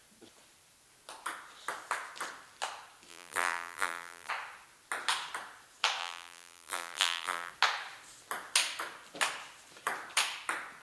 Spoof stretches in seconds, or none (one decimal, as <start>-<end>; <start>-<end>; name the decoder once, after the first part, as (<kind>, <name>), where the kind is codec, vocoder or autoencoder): 3.1-4.3 (vocoder, BigVGAN v2); 6.0-7.5